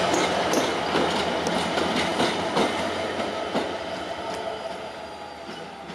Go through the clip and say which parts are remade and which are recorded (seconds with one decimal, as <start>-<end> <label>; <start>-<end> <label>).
0.0-5.9 recorded